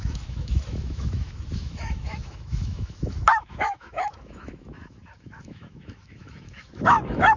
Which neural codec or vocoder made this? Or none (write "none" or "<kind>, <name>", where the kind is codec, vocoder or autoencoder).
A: autoencoder, DAC-VAE